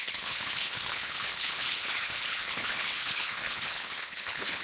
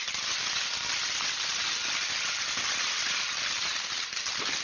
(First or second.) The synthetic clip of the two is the first